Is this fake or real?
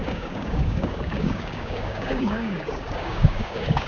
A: fake